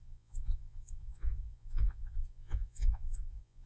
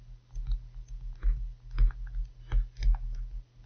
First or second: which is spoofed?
first